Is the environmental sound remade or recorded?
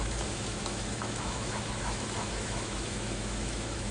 remade